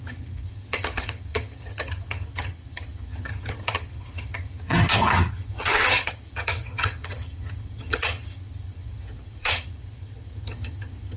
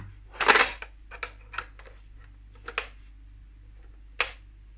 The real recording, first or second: second